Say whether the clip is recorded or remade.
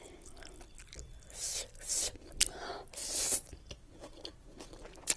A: recorded